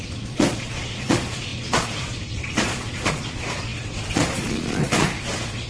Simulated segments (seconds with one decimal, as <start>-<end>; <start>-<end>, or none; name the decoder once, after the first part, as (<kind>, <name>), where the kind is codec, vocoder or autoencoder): 0.0-5.7 (vocoder, Vocos)